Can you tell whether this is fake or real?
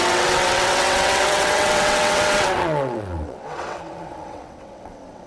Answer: fake